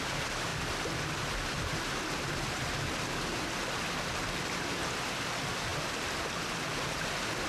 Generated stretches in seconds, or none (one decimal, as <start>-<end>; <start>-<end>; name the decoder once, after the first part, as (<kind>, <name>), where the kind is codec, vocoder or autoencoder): none